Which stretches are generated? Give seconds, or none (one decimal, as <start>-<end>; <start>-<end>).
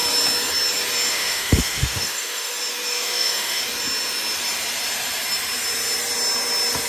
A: 1.1-2.5; 2.9-3.6